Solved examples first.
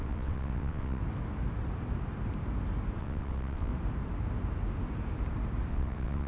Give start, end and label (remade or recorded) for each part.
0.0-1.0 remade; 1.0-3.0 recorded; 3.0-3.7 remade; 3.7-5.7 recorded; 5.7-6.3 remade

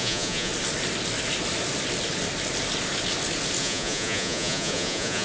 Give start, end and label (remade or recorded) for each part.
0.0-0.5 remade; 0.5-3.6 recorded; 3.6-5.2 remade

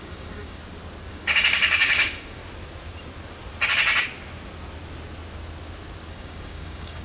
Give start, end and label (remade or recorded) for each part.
0.0-0.6 remade; 0.6-1.1 recorded; 1.1-2.4 remade; 2.4-6.1 recorded; 6.1-7.0 remade